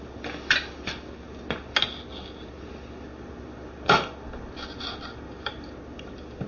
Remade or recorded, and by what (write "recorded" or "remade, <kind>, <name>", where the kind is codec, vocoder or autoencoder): recorded